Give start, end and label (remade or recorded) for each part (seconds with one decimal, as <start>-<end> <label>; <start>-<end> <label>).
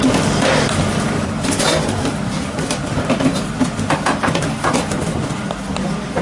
0.0-6.2 remade